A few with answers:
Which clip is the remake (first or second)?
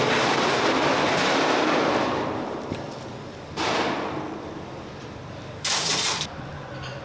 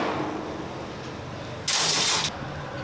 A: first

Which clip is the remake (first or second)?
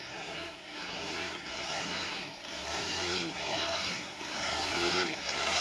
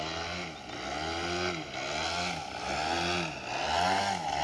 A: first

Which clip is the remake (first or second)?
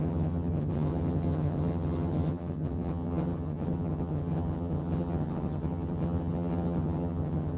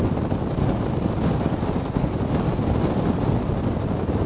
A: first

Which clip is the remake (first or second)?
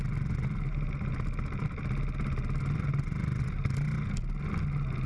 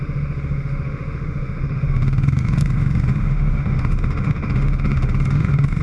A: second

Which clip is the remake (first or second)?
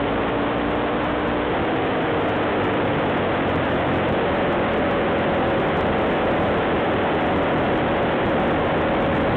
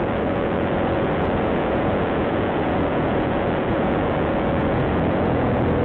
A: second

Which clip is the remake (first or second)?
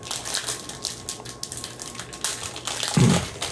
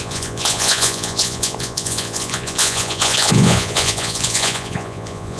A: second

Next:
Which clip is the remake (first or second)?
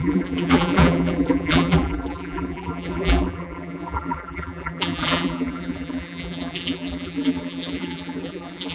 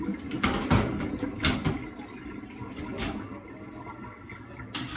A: first